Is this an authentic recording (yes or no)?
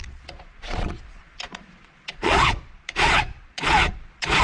no